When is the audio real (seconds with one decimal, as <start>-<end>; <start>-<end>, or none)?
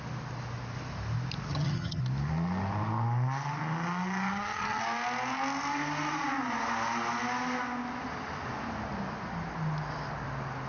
0.0-1.5; 2.0-4.3; 4.8-10.7